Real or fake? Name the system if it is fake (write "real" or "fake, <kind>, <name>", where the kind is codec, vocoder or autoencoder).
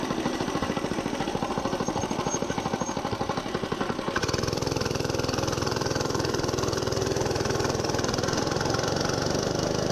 fake, vocoder, BigVGAN v2